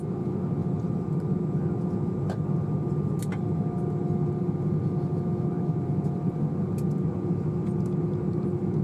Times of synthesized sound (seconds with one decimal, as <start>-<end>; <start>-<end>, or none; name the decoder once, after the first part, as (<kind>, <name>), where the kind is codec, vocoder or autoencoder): none

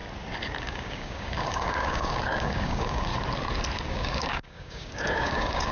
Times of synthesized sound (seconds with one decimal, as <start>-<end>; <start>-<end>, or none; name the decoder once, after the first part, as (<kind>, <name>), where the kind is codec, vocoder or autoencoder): 0.6-3.1 (codec, DAC); 3.9-5.7

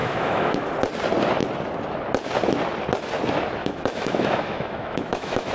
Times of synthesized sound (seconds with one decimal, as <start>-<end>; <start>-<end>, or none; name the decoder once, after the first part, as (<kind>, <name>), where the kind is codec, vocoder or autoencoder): 0.0-0.7 (autoencoder, DAC-VAE); 3.6-5.5

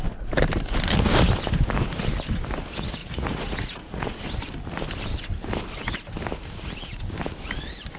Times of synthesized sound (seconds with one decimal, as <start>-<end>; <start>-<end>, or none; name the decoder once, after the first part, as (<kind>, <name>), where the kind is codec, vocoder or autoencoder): 3.0-4.2 (vocoder, Vocos)

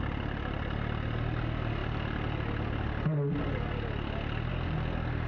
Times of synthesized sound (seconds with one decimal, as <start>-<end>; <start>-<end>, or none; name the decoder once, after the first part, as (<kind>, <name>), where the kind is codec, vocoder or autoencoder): none

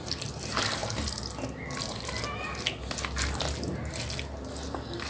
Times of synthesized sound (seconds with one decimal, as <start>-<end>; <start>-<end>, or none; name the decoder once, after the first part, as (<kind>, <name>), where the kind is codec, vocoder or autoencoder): none

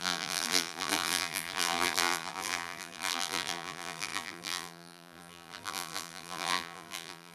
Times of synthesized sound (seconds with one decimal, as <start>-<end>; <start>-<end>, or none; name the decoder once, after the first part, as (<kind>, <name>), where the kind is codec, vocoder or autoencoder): 0.0-7.3 (vocoder, BigVGAN v2)